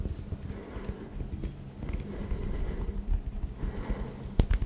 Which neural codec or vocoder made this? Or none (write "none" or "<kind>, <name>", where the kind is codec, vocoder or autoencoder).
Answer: none